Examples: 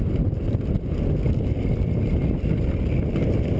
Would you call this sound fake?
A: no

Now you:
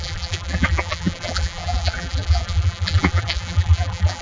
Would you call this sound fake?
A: yes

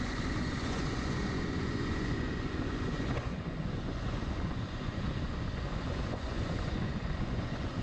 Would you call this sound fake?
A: yes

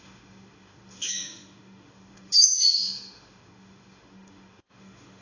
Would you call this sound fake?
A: yes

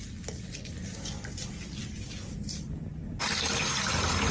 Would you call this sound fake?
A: no